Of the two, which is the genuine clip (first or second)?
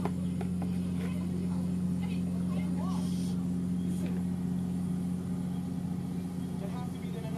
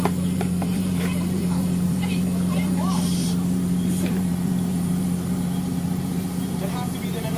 first